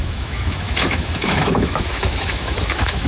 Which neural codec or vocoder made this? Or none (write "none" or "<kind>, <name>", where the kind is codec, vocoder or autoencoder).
autoencoder, DAC-VAE